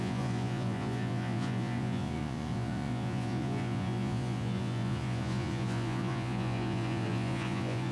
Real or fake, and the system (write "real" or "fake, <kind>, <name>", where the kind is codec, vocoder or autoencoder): fake, vocoder, Vocos